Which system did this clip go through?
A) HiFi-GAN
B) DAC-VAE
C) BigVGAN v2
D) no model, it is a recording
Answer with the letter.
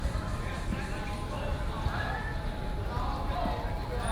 D